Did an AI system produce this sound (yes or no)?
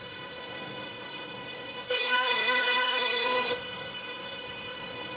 yes